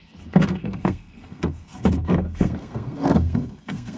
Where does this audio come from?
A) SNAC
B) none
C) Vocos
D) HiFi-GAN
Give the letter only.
A